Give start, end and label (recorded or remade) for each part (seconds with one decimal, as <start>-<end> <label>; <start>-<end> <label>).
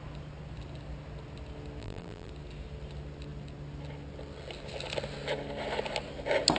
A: 0.0-1.8 recorded; 1.8-2.3 remade; 2.3-6.6 recorded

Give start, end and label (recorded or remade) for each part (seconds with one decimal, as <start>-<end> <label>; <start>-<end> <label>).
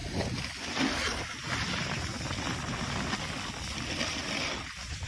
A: 0.0-5.1 recorded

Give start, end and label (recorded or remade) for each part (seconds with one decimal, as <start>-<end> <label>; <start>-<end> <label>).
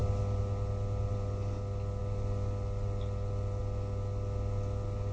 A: 0.0-5.1 recorded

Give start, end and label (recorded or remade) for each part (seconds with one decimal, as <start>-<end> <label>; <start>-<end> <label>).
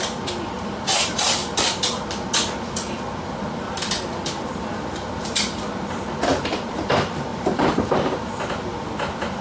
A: 0.0-7.3 recorded; 7.3-8.2 remade; 8.2-9.4 recorded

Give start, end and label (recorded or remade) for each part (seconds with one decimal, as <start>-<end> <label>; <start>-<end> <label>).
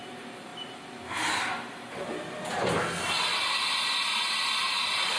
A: 0.0-0.5 remade; 0.5-3.6 recorded; 3.6-5.2 remade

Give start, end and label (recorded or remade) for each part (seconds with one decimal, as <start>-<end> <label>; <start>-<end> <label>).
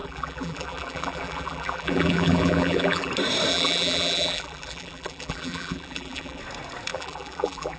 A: 0.0-3.1 remade; 3.1-3.5 recorded; 3.5-6.4 remade; 6.4-6.9 recorded; 6.9-7.8 remade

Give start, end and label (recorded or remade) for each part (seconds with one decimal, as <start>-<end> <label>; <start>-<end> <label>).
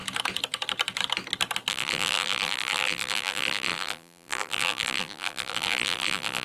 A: 0.0-1.7 recorded; 1.7-6.4 remade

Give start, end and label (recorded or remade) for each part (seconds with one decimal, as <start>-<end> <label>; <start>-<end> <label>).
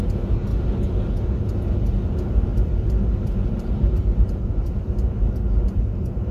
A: 0.0-2.5 recorded; 2.5-6.3 remade